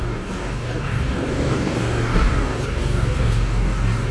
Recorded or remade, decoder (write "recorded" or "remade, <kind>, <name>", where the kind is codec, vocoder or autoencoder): remade, codec, DAC